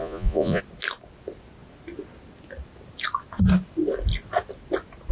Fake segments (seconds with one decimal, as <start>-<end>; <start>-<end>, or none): 0.0-0.6